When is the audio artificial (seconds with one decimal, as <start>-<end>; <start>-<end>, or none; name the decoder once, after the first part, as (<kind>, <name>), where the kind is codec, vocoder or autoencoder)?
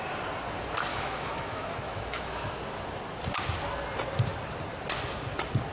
0.9-2.5 (autoencoder, DAC-VAE)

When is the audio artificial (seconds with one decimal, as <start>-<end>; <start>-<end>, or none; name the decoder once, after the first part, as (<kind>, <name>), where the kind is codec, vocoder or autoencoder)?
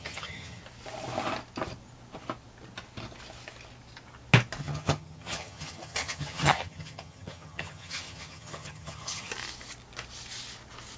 0.0-0.6 (vocoder, HiFi-GAN); 4.6-9.3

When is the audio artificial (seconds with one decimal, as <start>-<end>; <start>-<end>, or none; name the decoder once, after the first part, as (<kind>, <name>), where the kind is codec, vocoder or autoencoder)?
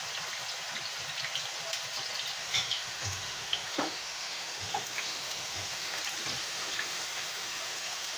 2.4-6.0 (autoencoder, DAC-VAE); 6.4-8.2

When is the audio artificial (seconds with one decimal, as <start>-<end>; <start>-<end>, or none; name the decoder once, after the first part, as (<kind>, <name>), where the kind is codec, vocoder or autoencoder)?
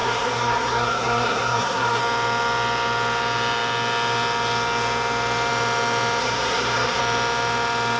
0.0-2.0 (codec, SNAC); 6.2-7.0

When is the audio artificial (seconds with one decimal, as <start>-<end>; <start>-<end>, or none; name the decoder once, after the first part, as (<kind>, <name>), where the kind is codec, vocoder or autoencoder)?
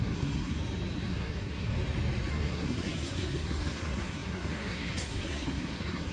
0.0-0.6 (codec, SNAC); 1.1-1.7; 2.3-6.1